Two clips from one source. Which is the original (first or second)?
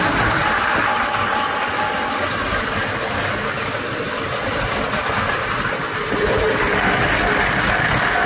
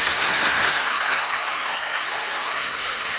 first